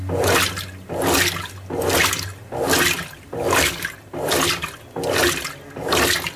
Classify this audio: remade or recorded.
recorded